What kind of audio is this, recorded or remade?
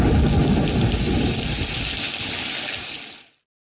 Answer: recorded